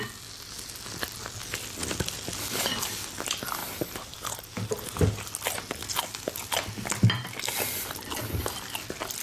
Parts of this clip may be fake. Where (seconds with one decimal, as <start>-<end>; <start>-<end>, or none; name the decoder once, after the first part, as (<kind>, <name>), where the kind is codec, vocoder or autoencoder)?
none